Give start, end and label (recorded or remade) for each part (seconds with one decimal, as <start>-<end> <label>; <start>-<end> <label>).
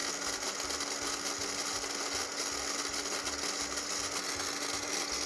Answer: 0.0-5.3 recorded